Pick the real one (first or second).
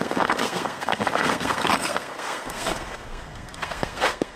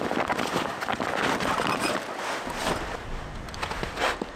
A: second